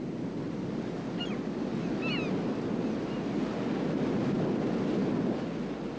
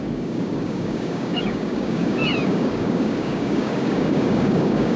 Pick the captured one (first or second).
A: first